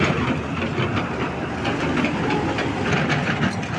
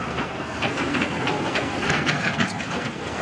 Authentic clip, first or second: first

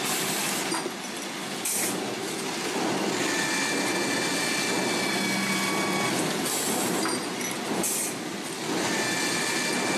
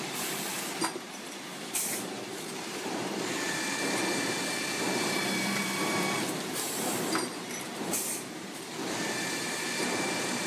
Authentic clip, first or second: first